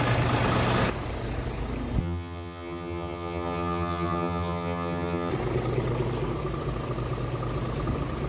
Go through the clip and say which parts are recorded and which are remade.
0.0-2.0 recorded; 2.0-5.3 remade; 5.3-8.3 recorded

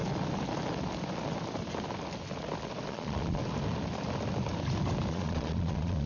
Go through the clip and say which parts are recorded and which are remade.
0.0-2.9 recorded; 2.9-3.4 remade; 3.4-5.1 recorded; 5.1-6.1 remade

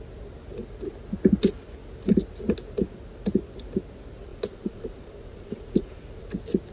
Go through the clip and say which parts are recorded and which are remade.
0.0-4.3 recorded; 4.3-6.3 remade; 6.3-6.7 recorded

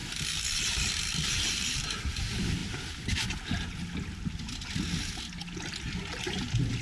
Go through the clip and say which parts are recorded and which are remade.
0.0-1.8 remade; 1.8-6.8 recorded

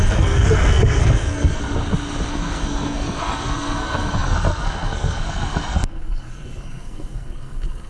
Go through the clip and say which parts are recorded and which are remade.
0.0-1.6 remade; 1.6-2.3 recorded; 2.3-7.9 remade

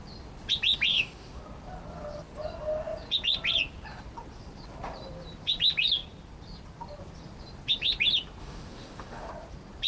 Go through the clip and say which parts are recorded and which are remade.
0.0-0.9 recorded; 0.9-1.4 remade; 1.4-8.4 recorded; 8.4-9.3 remade; 9.3-9.9 recorded

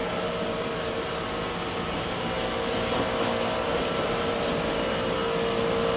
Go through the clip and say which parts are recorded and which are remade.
0.0-2.2 remade; 2.2-3.7 recorded; 3.7-4.3 remade; 4.3-6.0 recorded

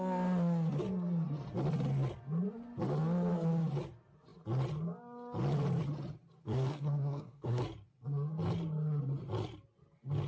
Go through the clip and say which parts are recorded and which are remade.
0.0-6.4 recorded; 6.4-7.6 remade; 7.6-10.3 recorded